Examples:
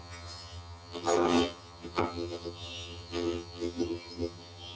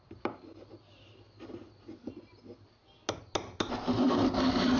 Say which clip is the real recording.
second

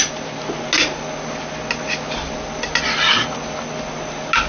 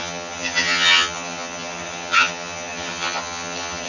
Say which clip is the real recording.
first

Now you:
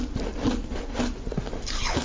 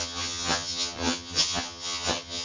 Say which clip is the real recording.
first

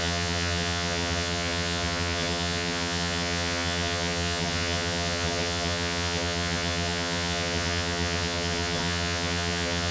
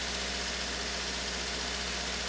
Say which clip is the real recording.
second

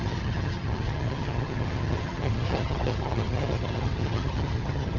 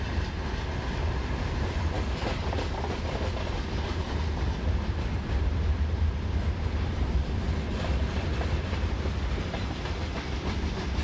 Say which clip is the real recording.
second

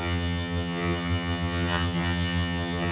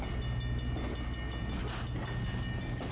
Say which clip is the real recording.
second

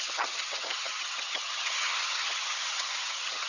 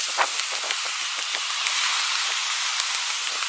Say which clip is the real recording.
second